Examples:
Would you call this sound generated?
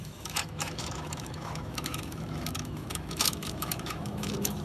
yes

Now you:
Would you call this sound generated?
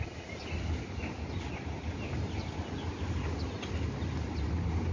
no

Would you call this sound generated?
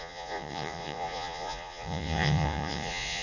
yes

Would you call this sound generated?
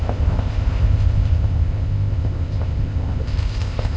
yes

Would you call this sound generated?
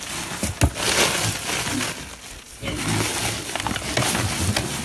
no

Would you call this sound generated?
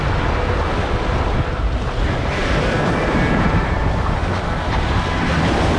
no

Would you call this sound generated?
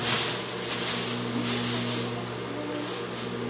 no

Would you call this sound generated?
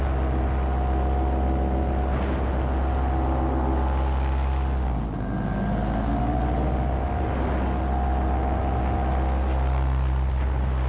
no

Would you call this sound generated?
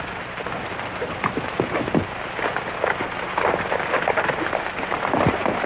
no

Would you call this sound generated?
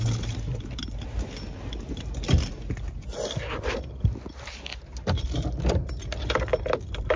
no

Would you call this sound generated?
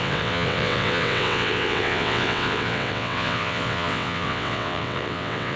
yes